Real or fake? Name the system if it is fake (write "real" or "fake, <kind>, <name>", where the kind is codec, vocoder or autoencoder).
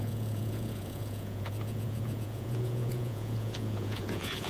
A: fake, vocoder, Vocos